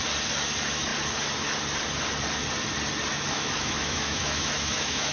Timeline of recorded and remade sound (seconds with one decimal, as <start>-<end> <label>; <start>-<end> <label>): 0.0-3.1 recorded; 3.1-5.1 remade